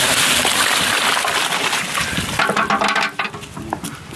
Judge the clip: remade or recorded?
recorded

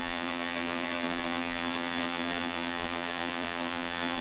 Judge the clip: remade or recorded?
remade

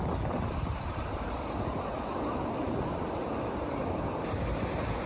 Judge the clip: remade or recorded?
remade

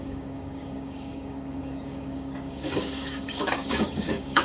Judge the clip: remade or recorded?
remade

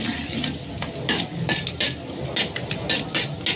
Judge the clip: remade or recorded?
recorded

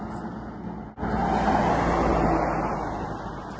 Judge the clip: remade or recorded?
recorded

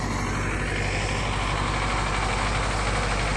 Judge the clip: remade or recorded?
recorded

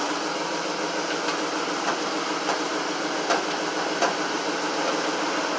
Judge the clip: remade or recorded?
recorded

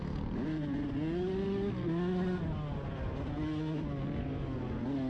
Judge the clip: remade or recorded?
recorded